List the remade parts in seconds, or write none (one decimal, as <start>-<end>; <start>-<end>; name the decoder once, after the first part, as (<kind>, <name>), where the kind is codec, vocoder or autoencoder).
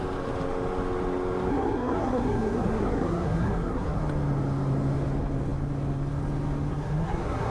1.5-4.0 (codec, SNAC); 6.7-7.5